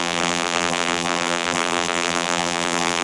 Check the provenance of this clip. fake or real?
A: fake